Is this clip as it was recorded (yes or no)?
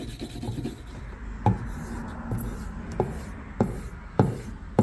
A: yes